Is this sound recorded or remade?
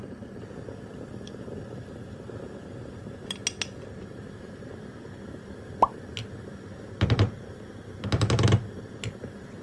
recorded